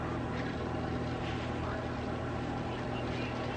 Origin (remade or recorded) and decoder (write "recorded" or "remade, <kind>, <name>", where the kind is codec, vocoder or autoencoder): remade, vocoder, BigVGAN v2